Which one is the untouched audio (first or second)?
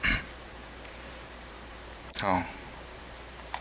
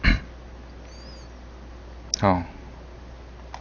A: second